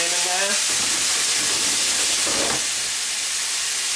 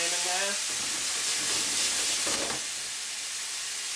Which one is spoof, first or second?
first